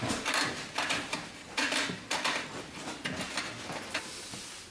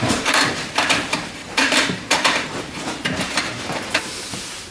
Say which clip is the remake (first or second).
second